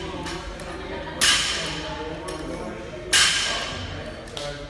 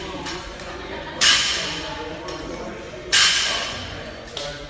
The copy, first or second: second